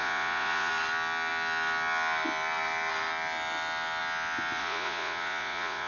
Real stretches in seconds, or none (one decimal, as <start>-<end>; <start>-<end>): 0.7-4.6